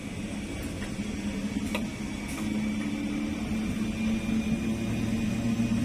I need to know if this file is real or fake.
real